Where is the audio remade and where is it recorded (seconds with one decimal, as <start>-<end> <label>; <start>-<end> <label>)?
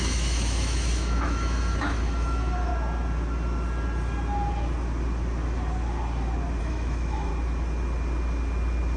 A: 0.0-2.7 remade; 2.7-6.6 recorded; 6.6-7.3 remade; 7.3-9.0 recorded